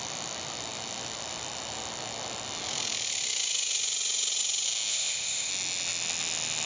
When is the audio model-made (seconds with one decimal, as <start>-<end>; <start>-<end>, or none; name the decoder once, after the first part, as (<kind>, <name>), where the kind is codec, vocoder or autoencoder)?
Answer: 4.9-5.5 (codec, ZipCodec)